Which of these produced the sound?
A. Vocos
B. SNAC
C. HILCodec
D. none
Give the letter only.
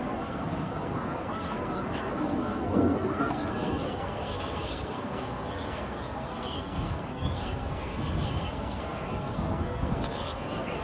B